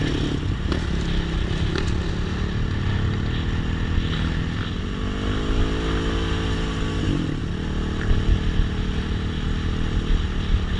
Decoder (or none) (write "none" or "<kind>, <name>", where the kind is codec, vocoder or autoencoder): none